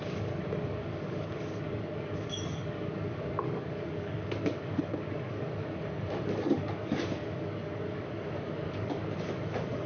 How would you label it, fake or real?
fake